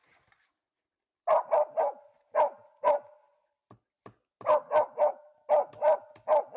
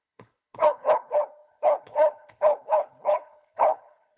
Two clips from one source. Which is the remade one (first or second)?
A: second